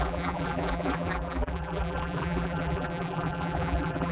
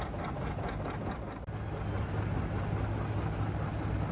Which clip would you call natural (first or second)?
second